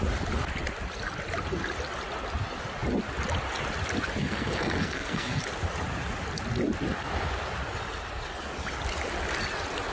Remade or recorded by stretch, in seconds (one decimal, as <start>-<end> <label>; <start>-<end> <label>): 0.0-4.2 recorded; 4.2-5.4 remade; 5.4-9.9 recorded